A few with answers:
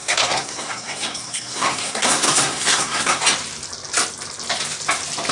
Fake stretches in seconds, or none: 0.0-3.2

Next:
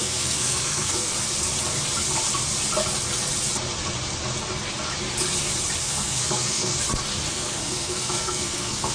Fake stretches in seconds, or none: 0.0-1.1; 5.8-6.7; 7.3-8.9

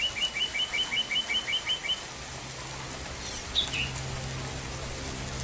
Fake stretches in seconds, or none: none